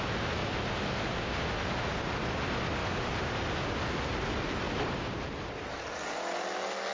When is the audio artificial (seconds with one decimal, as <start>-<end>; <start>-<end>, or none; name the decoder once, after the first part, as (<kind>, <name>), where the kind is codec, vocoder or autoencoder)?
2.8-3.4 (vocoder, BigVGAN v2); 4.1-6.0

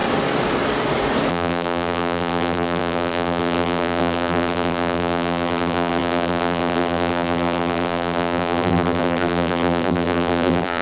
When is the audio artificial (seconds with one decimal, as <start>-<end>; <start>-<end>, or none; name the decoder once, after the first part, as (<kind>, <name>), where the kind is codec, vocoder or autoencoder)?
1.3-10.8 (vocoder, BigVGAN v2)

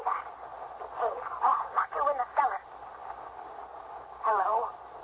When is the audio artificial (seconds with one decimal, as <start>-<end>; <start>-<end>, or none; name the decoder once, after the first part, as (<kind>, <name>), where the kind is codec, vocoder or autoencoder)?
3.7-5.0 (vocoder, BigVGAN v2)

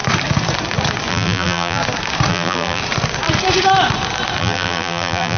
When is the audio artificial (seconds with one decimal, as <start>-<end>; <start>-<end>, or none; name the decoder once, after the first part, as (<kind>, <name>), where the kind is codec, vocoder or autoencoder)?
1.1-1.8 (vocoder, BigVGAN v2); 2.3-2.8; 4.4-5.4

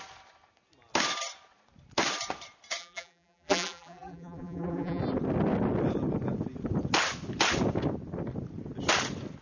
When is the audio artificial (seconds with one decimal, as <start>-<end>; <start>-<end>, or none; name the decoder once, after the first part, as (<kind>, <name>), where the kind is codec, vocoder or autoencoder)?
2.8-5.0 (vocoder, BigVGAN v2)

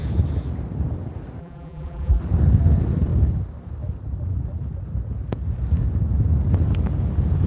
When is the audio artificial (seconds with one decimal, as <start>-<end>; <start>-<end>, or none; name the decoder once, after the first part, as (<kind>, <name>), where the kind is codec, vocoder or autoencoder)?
1.4-2.2 (vocoder, BigVGAN v2)

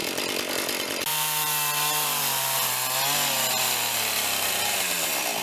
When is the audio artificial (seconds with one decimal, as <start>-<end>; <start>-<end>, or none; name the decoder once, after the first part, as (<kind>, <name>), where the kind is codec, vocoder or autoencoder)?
0.0-0.5 (vocoder, BigVGAN v2); 1.1-2.2